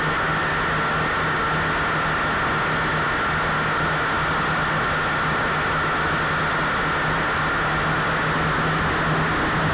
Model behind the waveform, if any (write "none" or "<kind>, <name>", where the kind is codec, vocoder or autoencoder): none